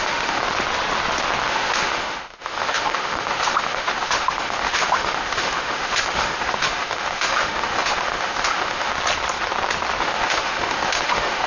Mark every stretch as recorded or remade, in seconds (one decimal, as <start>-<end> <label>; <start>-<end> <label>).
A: 0.0-0.4 remade; 0.4-1.5 recorded; 1.5-8.9 remade; 8.9-10.0 recorded; 10.0-11.5 remade

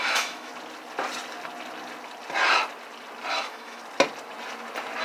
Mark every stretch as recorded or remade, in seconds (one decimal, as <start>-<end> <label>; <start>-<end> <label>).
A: 0.0-0.5 remade; 0.5-3.3 recorded; 3.3-3.8 remade; 3.8-5.0 recorded

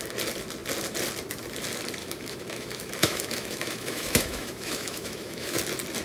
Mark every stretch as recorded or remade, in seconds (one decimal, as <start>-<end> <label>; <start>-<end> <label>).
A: 0.0-2.0 recorded; 2.0-5.6 remade; 5.6-6.0 recorded

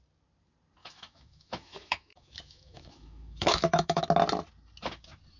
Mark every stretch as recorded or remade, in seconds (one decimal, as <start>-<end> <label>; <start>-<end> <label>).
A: 0.0-0.8 recorded; 0.8-4.0 remade; 4.0-5.4 recorded